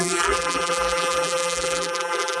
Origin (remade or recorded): remade